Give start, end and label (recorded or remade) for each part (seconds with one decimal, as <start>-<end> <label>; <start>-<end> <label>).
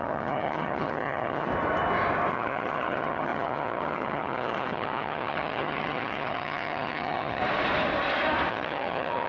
0.0-1.5 remade; 1.5-2.3 recorded; 2.3-7.4 remade; 7.4-8.5 recorded; 8.5-9.3 remade